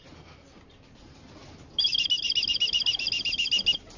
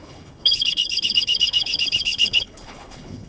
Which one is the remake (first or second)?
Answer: second